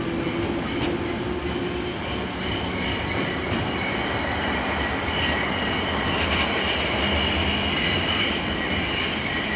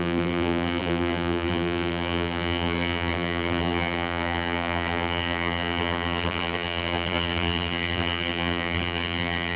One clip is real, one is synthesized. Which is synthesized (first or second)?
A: second